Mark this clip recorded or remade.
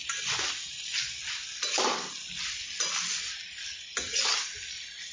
recorded